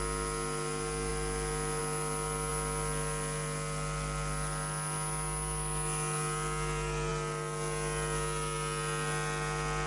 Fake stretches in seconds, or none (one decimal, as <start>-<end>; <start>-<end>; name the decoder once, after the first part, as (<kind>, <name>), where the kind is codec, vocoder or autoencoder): none